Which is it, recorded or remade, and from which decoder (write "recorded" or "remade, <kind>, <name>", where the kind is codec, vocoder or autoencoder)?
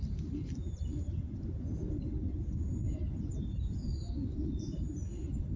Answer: remade, vocoder, BigVGAN v2